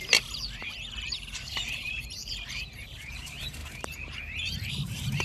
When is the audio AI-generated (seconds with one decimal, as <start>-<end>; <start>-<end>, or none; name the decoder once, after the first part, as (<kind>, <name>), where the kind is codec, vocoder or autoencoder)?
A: 0.0-5.2 (vocoder, BigVGAN v2)